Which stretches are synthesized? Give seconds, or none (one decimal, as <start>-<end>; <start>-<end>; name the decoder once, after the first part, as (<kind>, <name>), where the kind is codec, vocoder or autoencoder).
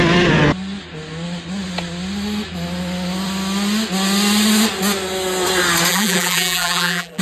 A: 5.9-7.2 (vocoder, BigVGAN v2)